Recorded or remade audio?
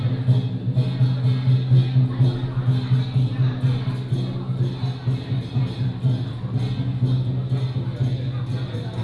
recorded